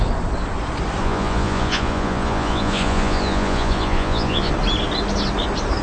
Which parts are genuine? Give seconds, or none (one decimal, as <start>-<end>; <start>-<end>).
0.0-1.0; 4.5-5.8